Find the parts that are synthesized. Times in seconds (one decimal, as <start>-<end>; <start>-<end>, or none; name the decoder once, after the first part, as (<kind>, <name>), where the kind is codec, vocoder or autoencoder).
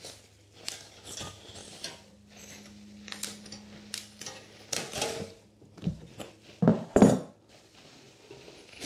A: none